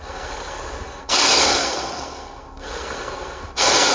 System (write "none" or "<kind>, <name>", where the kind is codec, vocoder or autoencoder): codec, SNAC